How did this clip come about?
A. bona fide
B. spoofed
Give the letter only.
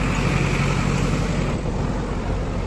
A